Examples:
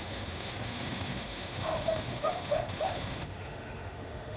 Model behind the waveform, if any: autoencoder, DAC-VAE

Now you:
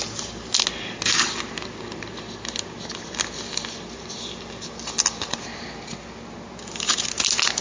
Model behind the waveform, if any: none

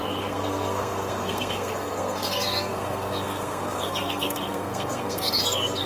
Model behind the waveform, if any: codec, SNAC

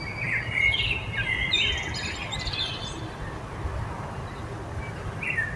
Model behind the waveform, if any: none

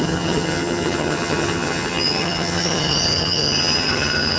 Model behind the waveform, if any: vocoder, HiFi-GAN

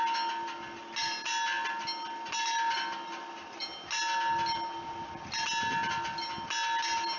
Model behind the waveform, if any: none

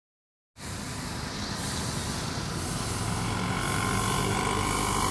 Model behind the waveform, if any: none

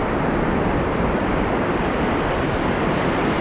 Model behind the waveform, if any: none